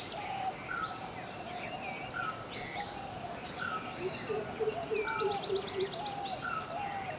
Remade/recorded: recorded